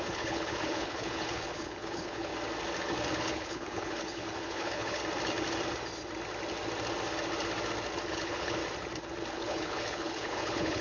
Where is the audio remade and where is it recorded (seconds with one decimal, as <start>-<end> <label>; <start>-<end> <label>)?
0.0-2.3 remade; 2.3-3.2 recorded; 3.2-5.0 remade; 5.0-8.1 recorded; 8.1-8.6 remade; 8.6-9.3 recorded; 9.3-10.8 remade